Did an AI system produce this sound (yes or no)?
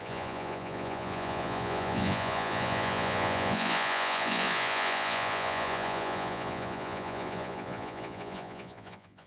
yes